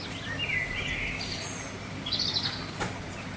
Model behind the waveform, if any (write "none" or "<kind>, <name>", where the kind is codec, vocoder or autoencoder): none